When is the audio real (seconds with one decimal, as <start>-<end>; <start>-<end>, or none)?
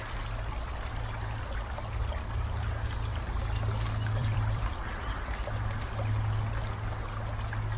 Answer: 0.0-4.2; 5.3-7.8